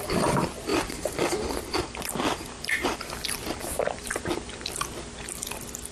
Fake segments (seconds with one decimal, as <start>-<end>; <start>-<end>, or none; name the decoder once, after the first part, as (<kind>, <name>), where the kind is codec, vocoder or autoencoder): 0.0-5.9 (vocoder, BigVGAN v2)